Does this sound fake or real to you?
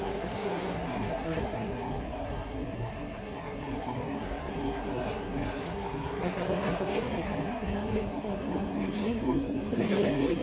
fake